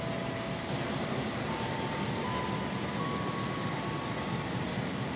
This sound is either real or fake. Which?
real